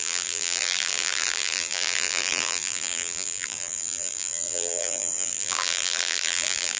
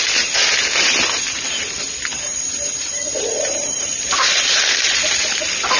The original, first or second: second